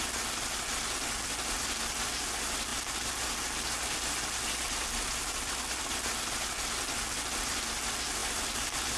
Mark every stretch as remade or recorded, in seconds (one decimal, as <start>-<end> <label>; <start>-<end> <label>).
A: 0.0-8.2 recorded; 8.2-9.0 remade